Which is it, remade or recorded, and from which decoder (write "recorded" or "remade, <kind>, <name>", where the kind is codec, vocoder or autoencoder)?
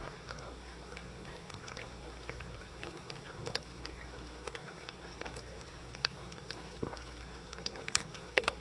remade, codec, SNAC